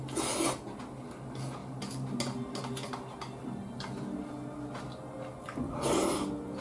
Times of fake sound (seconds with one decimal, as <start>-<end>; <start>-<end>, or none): none

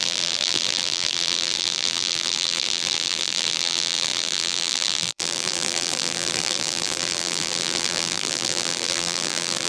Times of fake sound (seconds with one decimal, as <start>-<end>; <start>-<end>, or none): 0.0-9.7

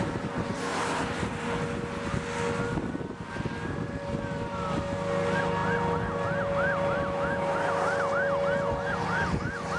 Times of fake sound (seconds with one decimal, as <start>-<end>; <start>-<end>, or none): 5.6-8.1

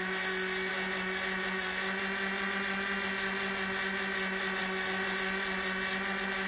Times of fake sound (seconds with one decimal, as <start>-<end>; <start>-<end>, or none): none

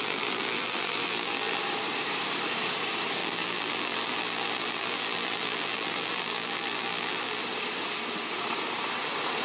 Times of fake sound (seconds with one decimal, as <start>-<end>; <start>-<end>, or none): 0.0-1.6; 3.2-7.4

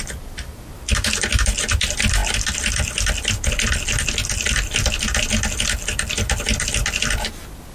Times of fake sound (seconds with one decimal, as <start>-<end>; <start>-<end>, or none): none

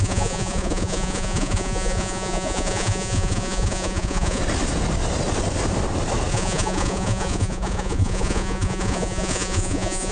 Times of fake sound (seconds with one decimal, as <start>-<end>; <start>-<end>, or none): 0.0-4.4; 6.3-10.1

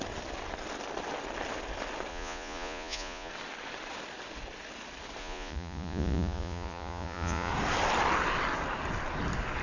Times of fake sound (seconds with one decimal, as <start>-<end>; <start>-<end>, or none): 2.1-3.3; 5.2-7.5